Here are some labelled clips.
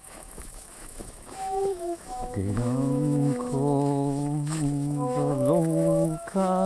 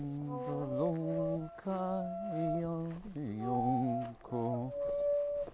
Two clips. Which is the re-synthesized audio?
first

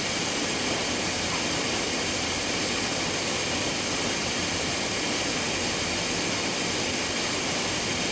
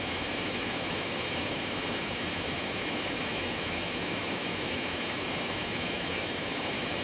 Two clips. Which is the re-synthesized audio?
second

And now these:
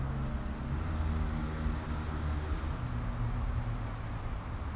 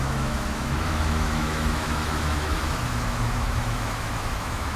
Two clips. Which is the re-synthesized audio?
second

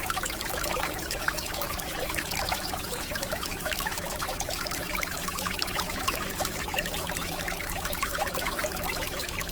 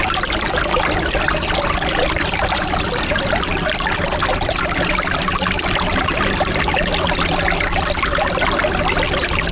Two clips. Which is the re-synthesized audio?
first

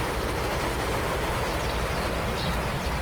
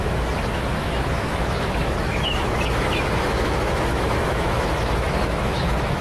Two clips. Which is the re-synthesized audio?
second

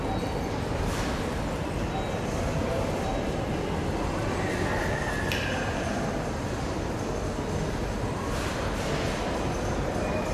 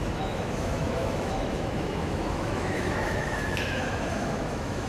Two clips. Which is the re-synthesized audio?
second